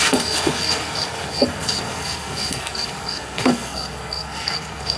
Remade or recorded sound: remade